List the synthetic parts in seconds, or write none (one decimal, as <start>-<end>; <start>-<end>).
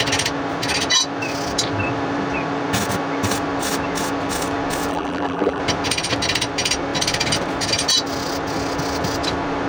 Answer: 4.9-5.6